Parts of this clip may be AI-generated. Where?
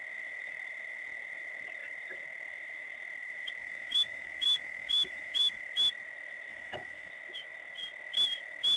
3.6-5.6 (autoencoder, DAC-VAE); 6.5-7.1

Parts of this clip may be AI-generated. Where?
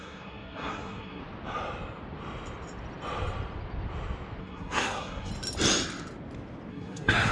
0.0-1.2 (codec, SNAC); 4.4-5.3; 6.7-7.3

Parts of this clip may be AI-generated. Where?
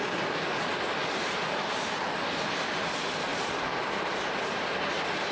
1.0-2.0 (vocoder, BigVGAN v2); 3.3-4.7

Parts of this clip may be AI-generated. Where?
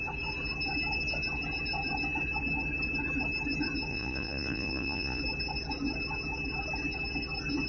3.9-5.2 (vocoder, Vocos)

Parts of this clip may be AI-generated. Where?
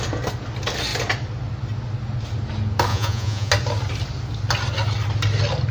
2.9-3.5 (vocoder, Vocos)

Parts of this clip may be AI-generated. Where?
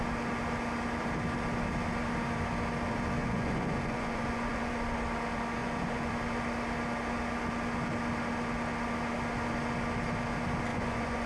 3.2-4.7 (vocoder, Vocos); 5.6-6.1; 10.7-11.3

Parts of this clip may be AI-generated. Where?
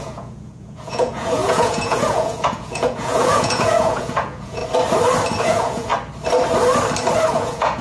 0.0-4.6 (vocoder, Vocos); 5.4-5.9; 7.3-7.8